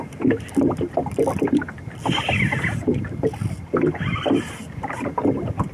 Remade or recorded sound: recorded